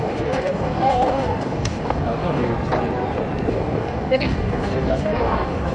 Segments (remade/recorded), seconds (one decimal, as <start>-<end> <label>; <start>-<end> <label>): 0.0-2.5 remade; 2.5-3.5 recorded; 3.5-5.7 remade